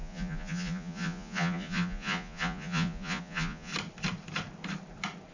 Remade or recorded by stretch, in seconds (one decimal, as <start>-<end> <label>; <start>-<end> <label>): 0.0-3.7 remade; 3.7-5.3 recorded